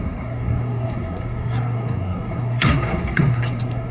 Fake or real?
fake